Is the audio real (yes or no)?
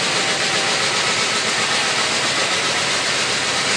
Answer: yes